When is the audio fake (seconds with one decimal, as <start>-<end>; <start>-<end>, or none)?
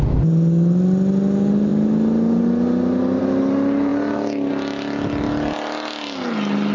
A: none